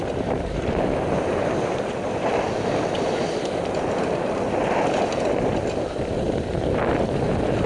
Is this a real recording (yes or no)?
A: no